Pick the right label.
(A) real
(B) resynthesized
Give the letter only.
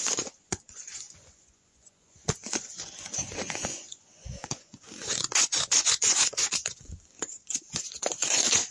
B